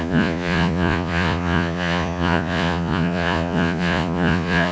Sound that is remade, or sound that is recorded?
remade